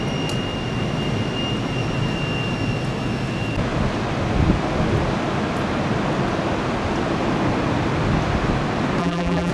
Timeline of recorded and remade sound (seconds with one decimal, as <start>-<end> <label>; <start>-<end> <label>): 0.0-9.0 recorded; 9.0-9.5 remade